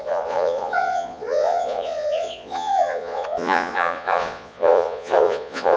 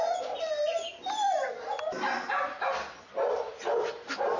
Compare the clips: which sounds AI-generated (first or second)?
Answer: first